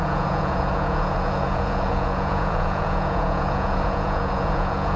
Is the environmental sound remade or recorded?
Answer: remade